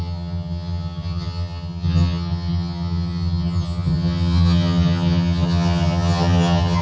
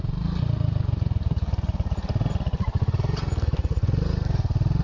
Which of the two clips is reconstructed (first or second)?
first